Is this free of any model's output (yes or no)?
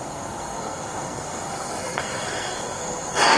no